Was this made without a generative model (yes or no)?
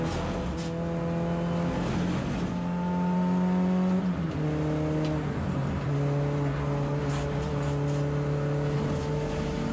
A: yes